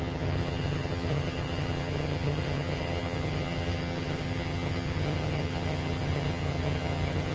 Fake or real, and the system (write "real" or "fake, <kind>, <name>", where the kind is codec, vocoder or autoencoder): fake, vocoder, HiFi-GAN